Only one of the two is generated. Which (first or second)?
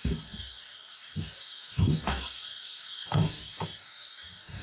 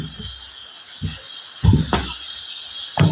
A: first